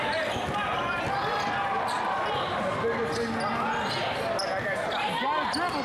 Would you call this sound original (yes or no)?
yes